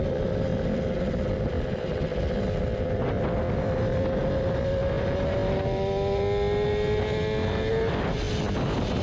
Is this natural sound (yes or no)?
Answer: yes